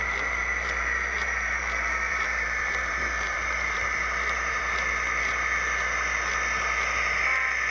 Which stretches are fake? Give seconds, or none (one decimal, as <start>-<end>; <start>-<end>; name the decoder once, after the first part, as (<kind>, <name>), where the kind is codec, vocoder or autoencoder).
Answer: 0.0-4.6 (vocoder, BigVGAN v2)